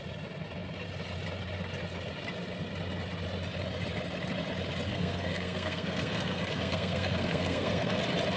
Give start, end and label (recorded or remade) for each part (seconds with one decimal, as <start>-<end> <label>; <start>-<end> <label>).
0.0-4.9 recorded; 4.9-8.0 remade; 8.0-8.4 recorded